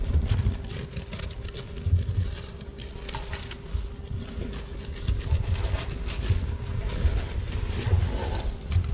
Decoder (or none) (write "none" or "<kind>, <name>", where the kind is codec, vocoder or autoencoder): none